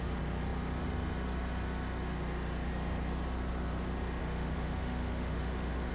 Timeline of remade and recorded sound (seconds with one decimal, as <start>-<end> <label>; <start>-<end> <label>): 0.0-4.2 recorded; 4.2-5.9 remade